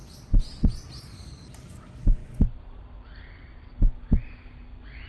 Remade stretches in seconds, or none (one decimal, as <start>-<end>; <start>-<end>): none